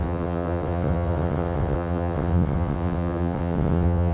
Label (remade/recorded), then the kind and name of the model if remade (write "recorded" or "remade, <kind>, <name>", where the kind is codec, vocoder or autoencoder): remade, vocoder, WaveNeXt